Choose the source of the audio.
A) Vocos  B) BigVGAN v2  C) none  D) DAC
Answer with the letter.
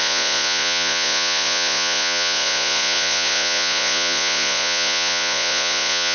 A